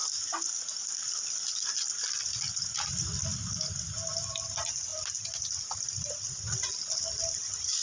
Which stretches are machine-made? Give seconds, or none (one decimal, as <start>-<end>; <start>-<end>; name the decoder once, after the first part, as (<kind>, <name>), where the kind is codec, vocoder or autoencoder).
0.0-2.3 (vocoder, BigVGAN v2); 4.9-5.4